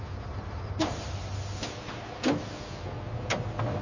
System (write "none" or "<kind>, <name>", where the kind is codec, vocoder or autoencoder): none